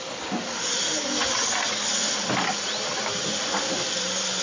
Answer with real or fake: real